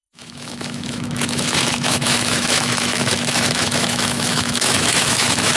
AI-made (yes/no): yes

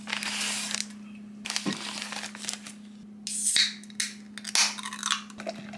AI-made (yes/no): no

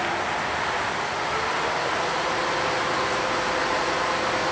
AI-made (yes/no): no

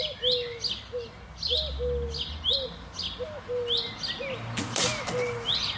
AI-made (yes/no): no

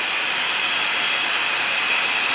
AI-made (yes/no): no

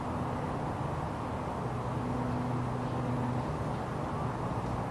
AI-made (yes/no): no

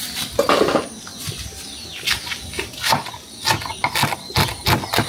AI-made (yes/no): no